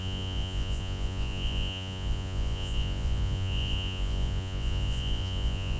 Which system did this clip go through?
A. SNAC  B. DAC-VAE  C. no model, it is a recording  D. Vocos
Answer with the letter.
D